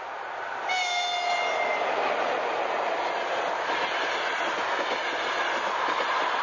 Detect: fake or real real